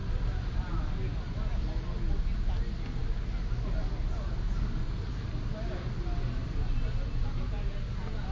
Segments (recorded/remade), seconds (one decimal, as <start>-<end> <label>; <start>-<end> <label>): 0.0-0.7 remade; 0.7-8.3 recorded